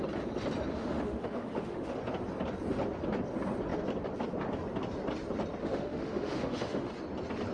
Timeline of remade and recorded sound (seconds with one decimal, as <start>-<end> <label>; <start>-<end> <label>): 0.0-0.7 recorded; 0.7-2.0 remade; 2.0-5.6 recorded; 5.6-6.9 remade; 6.9-7.5 recorded